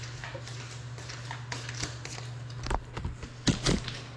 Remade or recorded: recorded